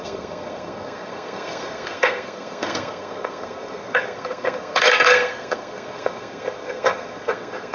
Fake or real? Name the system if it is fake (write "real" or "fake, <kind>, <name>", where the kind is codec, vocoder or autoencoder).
fake, codec, SNAC